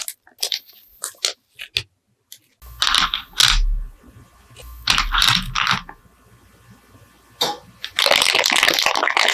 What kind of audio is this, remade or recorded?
recorded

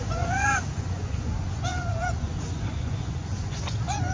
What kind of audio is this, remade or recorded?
remade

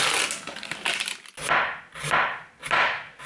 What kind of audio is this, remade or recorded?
recorded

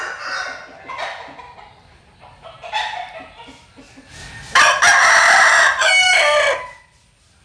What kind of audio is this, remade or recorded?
recorded